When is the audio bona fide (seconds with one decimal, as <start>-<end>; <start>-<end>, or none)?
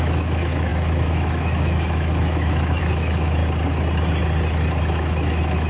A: 3.4-4.9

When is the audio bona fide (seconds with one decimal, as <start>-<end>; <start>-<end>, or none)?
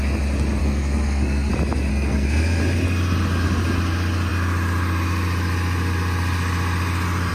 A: 0.0-0.6; 1.5-1.9; 2.6-7.3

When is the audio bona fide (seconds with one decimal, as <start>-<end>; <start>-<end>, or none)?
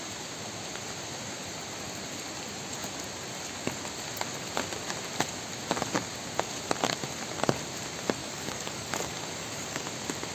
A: 0.0-8.2; 9.9-10.3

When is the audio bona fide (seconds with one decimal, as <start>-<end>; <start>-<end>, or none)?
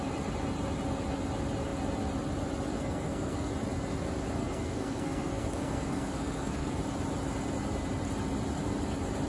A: 0.0-2.7; 3.5-4.4; 6.8-9.3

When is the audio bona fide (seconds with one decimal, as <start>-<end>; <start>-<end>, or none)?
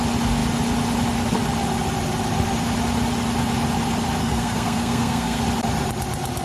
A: 0.0-4.2; 5.4-6.4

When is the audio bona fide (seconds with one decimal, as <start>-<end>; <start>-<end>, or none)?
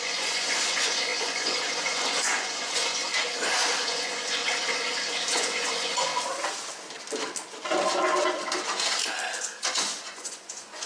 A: 3.1-3.8; 4.4-5.3; 6.1-9.4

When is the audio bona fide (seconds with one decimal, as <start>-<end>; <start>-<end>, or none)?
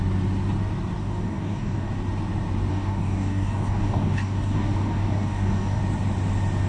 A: 0.0-1.0; 1.9-2.7; 5.8-6.7